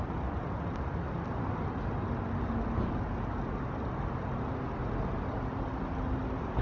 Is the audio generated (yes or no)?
no